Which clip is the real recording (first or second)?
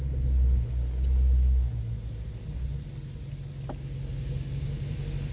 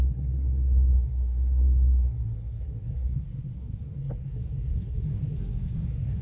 first